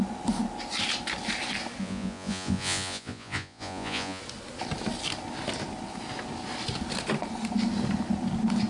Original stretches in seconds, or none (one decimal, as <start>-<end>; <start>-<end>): 0.0-1.8; 4.2-8.7